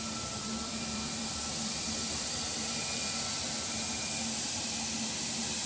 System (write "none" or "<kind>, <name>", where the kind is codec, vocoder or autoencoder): vocoder, BigVGAN v2